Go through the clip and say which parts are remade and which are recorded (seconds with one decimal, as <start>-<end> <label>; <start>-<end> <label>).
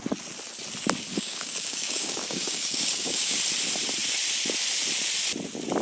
0.0-1.1 recorded; 1.1-3.4 remade; 3.4-5.8 recorded